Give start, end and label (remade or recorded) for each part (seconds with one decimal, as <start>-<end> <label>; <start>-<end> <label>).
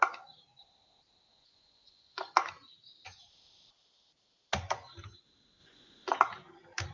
0.0-1.3 recorded; 1.3-2.5 remade; 2.5-5.6 recorded; 5.6-6.2 remade; 6.2-6.9 recorded